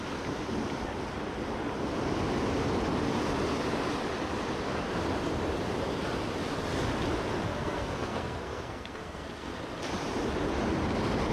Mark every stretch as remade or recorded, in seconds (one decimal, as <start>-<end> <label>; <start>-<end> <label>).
0.0-7.5 recorded; 7.5-9.6 remade; 9.6-11.3 recorded

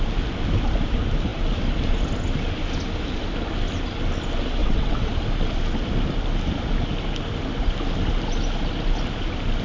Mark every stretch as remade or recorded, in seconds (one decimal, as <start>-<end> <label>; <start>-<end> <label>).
0.0-4.6 recorded; 4.6-5.1 remade; 5.1-9.6 recorded

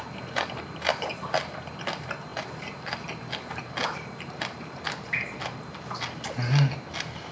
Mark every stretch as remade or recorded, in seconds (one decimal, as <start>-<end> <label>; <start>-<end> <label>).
0.0-7.3 recorded

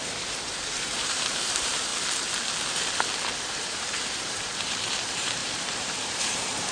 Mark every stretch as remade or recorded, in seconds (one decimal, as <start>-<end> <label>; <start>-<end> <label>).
0.0-1.9 remade; 1.9-3.4 recorded; 3.4-6.7 remade